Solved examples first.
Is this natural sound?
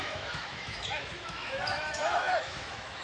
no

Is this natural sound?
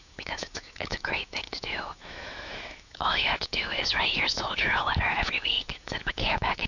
no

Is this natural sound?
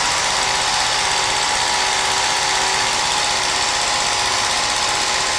yes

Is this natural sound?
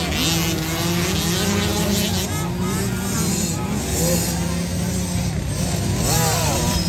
yes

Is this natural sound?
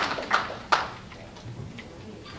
yes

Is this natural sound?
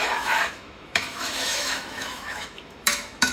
no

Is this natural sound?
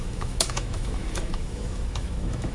no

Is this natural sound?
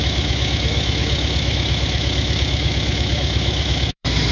no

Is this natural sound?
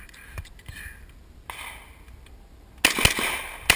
yes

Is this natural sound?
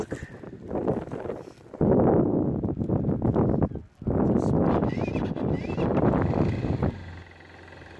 yes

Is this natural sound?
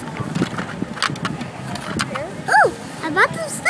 yes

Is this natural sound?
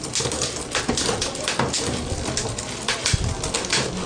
yes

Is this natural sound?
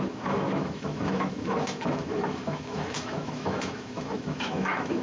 no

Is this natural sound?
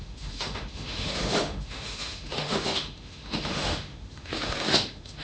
no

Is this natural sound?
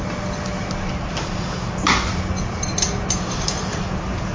yes